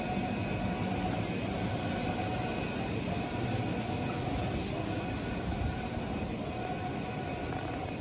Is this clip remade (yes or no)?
no